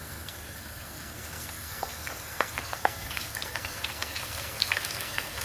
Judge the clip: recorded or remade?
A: remade